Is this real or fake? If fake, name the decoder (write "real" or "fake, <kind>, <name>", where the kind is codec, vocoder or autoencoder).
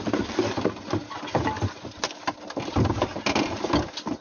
real